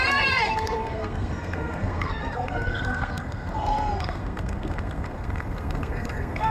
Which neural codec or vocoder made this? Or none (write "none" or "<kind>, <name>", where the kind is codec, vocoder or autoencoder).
codec, SNAC